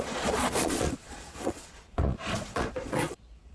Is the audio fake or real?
fake